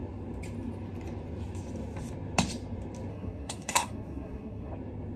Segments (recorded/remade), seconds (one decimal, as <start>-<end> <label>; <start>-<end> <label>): 0.0-3.1 recorded; 3.1-4.7 remade; 4.7-5.2 recorded